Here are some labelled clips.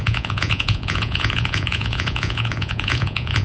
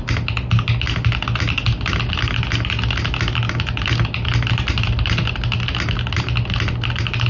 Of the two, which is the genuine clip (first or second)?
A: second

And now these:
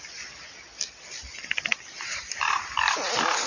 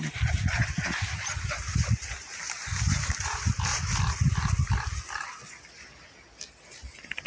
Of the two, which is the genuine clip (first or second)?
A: second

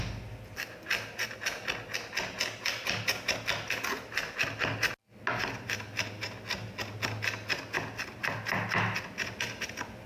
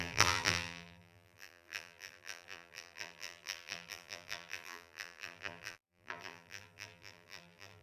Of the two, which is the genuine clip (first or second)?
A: first